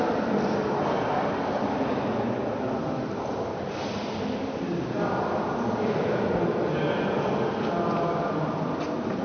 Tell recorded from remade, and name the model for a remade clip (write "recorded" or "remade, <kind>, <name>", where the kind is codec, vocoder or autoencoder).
recorded